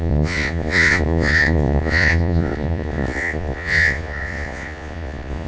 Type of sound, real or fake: fake